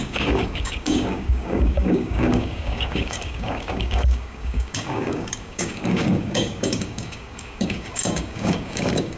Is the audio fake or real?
fake